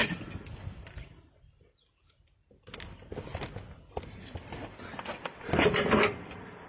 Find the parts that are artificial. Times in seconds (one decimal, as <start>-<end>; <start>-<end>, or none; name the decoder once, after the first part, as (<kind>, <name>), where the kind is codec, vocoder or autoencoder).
none